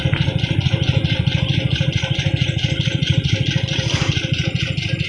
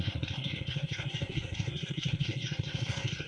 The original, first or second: first